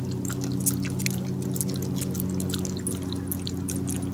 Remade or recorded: recorded